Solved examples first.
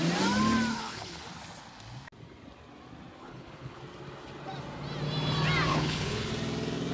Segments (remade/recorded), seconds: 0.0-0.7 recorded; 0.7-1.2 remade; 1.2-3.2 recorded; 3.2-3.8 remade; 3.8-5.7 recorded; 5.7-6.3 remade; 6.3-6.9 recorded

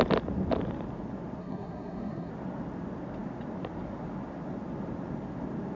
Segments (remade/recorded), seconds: 0.0-1.4 recorded; 1.4-2.3 remade; 2.3-5.7 recorded

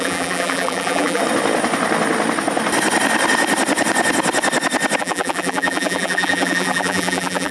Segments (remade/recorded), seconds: 0.0-1.2 remade; 1.2-5.0 recorded; 5.0-7.5 remade

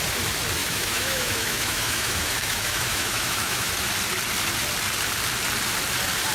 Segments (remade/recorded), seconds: 0.0-0.6 recorded; 0.6-3.7 remade; 3.7-6.3 recorded